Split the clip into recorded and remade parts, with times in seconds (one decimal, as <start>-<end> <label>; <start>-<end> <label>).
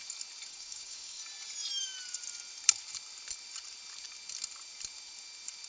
0.0-0.5 recorded; 0.5-1.2 remade; 1.2-5.7 recorded